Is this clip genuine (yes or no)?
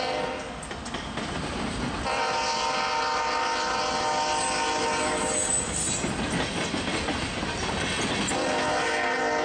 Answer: yes